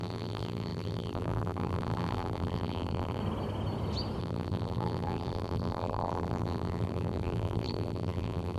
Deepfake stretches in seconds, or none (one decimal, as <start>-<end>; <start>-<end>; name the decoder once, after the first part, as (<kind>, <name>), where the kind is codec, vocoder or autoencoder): 0.0-3.2 (vocoder, BigVGAN v2); 4.2-8.6